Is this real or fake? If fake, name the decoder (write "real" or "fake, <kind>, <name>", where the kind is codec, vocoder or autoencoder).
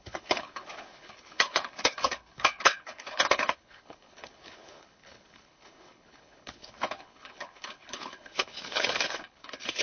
fake, codec, HILCodec